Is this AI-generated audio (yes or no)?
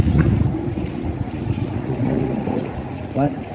yes